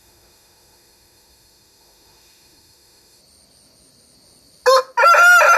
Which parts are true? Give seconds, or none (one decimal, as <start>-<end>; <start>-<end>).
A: 3.2-5.6